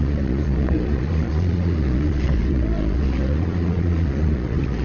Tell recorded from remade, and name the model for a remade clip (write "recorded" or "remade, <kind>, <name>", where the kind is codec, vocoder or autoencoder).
remade, vocoder, Vocos